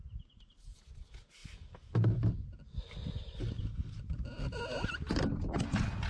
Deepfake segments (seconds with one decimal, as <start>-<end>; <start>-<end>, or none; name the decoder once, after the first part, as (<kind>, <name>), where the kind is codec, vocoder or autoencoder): none